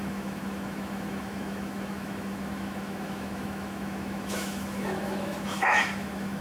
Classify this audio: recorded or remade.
remade